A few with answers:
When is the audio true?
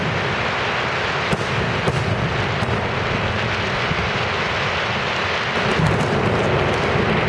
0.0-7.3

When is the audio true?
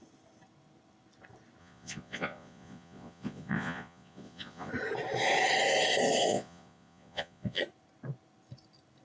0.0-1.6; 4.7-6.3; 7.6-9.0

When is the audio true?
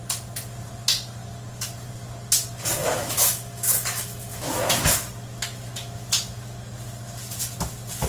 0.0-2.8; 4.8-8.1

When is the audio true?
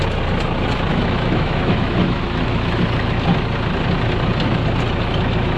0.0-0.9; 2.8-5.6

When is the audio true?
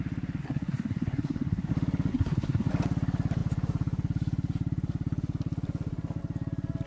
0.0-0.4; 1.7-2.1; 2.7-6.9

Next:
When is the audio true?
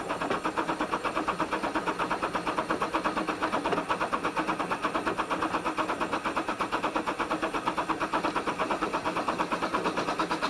0.0-10.5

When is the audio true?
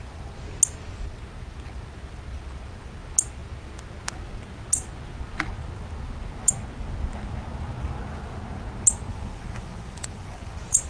0.0-9.1